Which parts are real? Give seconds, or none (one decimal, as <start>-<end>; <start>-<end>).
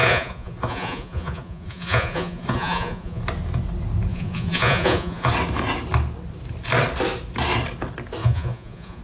3.2-4.1; 5.3-8.2